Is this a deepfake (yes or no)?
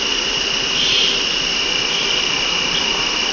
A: no